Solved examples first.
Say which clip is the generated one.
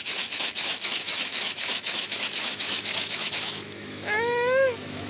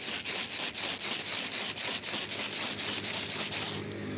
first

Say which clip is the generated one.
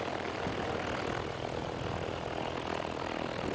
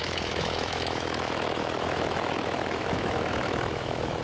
second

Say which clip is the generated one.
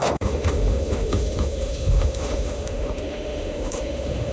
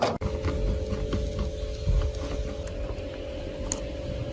first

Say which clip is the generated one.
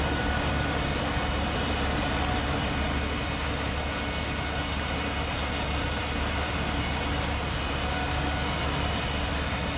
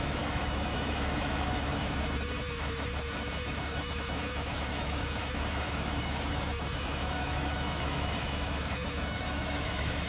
second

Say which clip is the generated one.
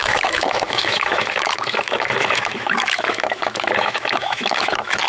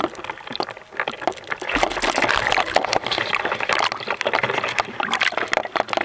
first